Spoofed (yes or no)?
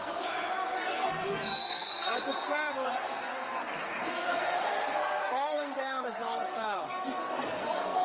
yes